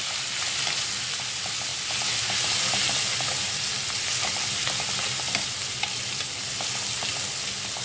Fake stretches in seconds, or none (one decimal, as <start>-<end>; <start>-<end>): none